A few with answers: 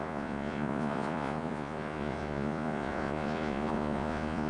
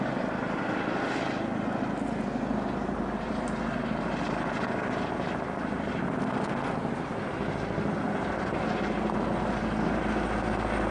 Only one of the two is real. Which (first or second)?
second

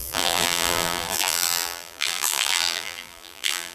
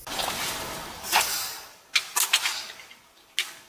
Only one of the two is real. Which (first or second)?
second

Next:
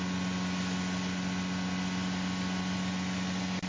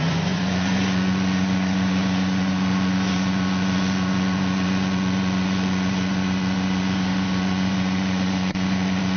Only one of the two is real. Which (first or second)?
first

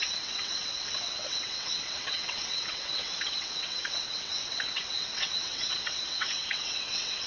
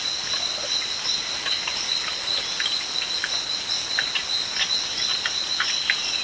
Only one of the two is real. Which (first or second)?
second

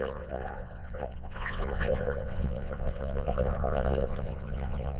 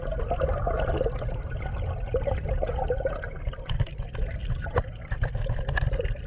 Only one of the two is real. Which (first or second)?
second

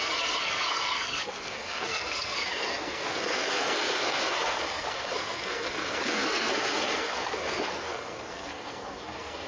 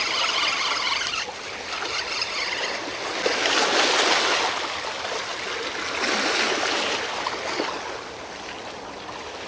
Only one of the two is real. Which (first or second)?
second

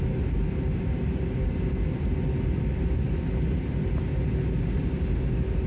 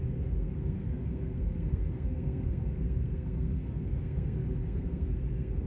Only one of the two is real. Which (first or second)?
first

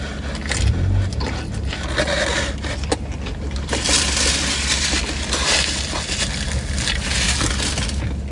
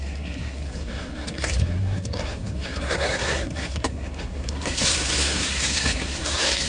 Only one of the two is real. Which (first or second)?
first